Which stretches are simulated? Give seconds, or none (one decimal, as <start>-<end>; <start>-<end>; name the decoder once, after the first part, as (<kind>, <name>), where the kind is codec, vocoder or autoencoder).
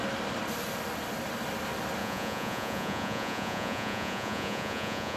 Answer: 2.0-5.2 (vocoder, Vocos)